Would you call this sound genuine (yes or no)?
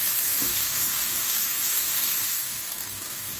no